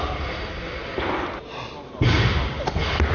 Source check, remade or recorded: recorded